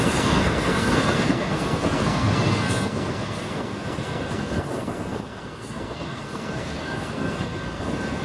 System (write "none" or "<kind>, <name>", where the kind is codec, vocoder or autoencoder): codec, SNAC